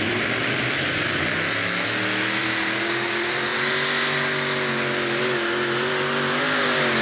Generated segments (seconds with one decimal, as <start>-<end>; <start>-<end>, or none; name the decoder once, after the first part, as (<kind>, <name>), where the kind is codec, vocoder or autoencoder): 0.0-1.6 (vocoder, BigVGAN v2); 2.4-7.0